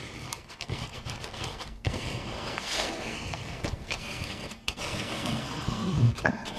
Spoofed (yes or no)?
yes